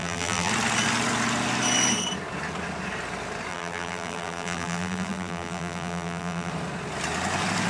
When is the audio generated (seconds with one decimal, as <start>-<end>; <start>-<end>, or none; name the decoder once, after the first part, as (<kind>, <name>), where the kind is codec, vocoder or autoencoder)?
0.0-0.5 (vocoder, BigVGAN v2); 3.5-6.5

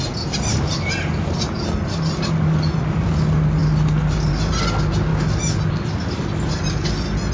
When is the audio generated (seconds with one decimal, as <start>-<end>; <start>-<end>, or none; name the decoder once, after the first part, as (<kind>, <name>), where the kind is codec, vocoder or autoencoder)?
0.7-1.5 (vocoder, BigVGAN v2)

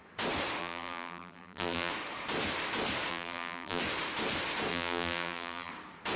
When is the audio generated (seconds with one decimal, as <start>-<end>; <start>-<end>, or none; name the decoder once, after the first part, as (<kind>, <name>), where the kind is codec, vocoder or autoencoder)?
0.6-1.9 (vocoder, BigVGAN v2); 3.1-3.8; 4.7-5.7

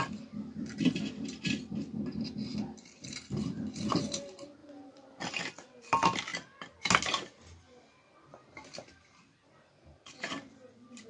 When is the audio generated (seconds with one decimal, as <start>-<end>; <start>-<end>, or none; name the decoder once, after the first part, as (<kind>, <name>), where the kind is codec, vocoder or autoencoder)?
0.0-6.3 (vocoder, BigVGAN v2); 10.3-11.1